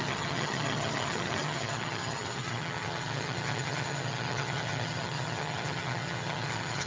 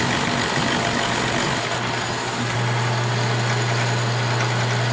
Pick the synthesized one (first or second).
first